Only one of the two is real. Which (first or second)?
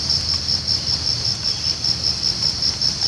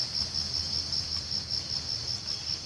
second